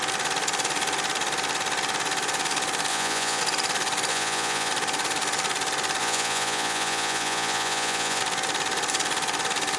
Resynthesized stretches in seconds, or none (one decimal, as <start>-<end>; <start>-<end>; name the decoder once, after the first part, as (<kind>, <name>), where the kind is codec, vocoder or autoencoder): 2.9-3.4 (vocoder, Vocos); 4.1-4.7; 6.0-8.2